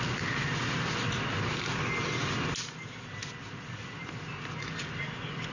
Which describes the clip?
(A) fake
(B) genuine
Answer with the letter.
B